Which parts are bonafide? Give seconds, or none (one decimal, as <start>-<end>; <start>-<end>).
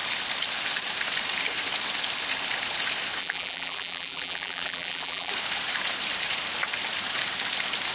0.0-3.2; 5.3-7.9